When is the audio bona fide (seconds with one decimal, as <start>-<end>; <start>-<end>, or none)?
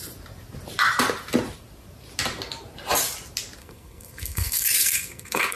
0.0-3.6